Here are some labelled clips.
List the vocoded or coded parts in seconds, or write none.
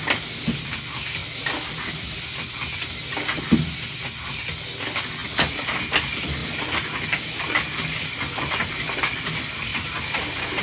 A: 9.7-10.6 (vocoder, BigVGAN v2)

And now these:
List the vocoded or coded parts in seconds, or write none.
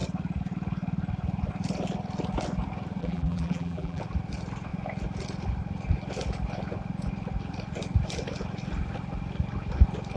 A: 3.0-4.0 (vocoder, BigVGAN v2)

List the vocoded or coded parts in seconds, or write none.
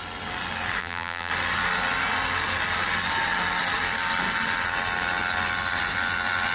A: 0.8-1.3 (vocoder, BigVGAN v2)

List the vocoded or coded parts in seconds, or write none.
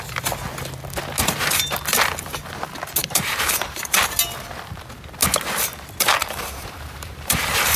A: 3.0-4.0 (vocoder, BigVGAN v2); 6.2-7.8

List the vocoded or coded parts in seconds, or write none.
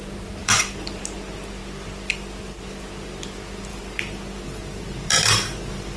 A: 0.4-1.0 (vocoder, BigVGAN v2); 3.7-6.0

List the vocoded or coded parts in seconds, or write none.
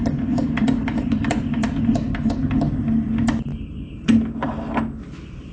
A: 0.0-2.0 (vocoder, BigVGAN v2)